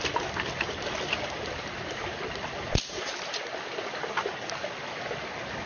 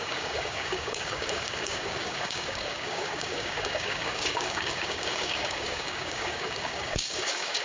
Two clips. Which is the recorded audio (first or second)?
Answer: first